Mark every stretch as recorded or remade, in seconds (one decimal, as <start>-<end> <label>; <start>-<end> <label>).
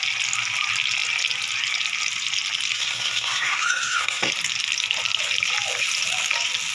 0.0-2.7 recorded; 2.7-4.3 remade; 4.3-6.7 recorded